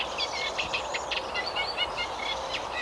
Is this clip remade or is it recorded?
remade